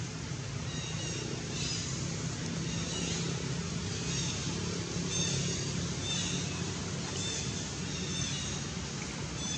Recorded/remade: recorded